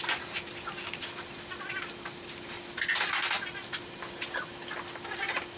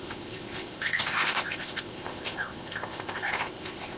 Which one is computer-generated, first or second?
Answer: second